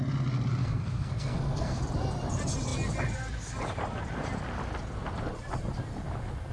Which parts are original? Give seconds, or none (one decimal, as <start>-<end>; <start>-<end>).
0.0-0.6; 1.8-6.5